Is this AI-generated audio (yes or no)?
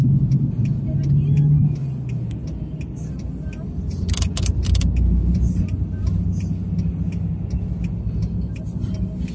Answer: no